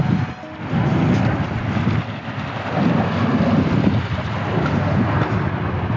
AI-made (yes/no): no